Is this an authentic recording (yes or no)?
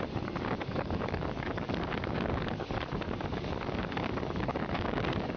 no